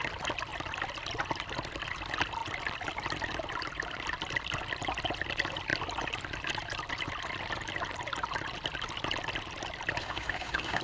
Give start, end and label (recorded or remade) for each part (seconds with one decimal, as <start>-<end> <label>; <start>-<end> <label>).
0.0-10.0 recorded; 10.0-10.8 remade